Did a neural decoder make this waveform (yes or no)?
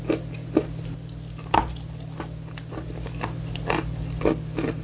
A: no